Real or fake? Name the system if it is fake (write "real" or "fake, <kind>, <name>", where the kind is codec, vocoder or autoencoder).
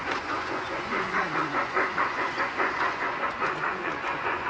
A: fake, vocoder, Vocos